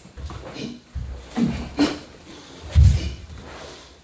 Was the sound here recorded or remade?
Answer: recorded